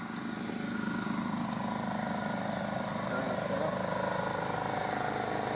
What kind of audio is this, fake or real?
real